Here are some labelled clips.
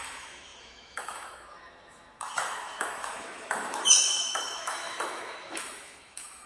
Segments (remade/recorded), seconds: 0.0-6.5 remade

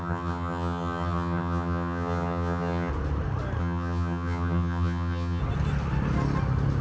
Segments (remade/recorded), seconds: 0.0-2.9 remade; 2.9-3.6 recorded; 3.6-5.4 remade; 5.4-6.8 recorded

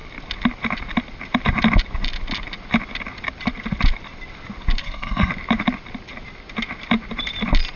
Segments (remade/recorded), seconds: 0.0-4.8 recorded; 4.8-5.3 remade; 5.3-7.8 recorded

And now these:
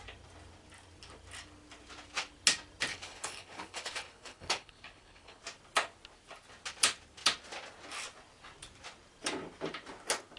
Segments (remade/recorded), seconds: 0.0-2.9 recorded; 2.9-5.4 remade; 5.4-10.4 recorded

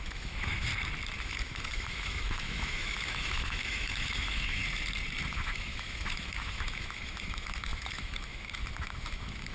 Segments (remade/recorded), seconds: 0.0-0.7 remade; 0.7-1.2 recorded; 1.2-4.6 remade; 4.6-5.3 recorded; 5.3-9.5 remade